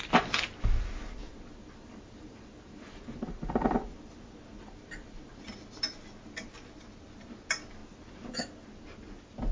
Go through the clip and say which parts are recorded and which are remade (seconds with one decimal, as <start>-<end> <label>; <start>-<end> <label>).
0.0-1.2 recorded; 1.2-5.4 remade; 5.4-7.8 recorded; 7.8-8.3 remade; 8.3-9.5 recorded